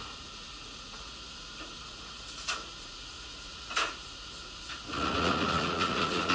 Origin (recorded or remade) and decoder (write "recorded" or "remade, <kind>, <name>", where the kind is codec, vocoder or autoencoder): remade, vocoder, Vocos